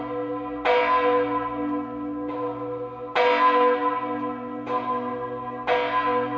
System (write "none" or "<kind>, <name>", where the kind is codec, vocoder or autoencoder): none